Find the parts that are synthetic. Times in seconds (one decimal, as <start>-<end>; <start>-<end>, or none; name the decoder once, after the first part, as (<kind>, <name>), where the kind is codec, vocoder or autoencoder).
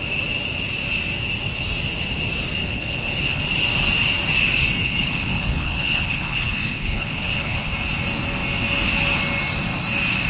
2.6-3.4 (codec, HILCodec); 4.8-7.7